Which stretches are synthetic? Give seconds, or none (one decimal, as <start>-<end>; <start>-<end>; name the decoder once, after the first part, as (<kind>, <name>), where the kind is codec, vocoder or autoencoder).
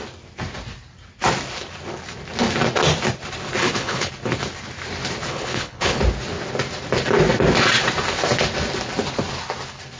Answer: 3.6-4.1 (codec, HILCodec); 5.3-6.0